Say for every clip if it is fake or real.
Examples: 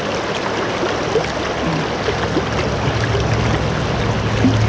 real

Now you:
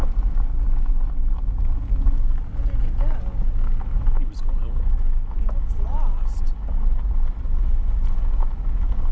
real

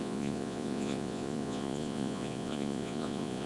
fake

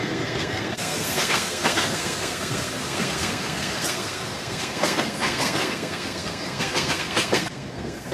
fake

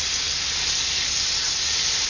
real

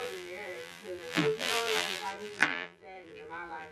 fake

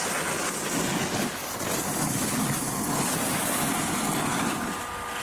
real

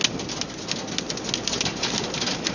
real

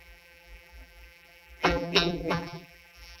fake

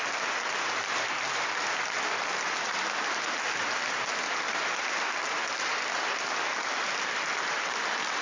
real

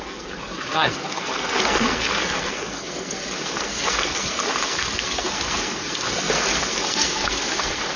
fake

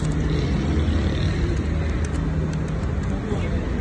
real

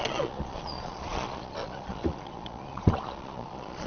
fake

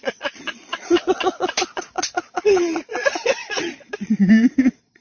fake